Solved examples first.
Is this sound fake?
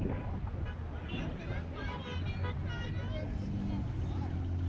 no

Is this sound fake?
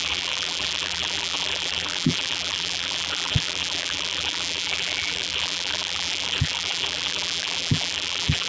yes